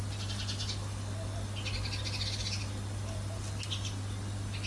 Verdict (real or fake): real